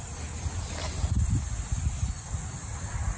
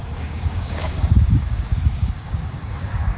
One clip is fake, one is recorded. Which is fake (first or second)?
second